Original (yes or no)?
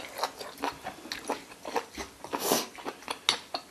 yes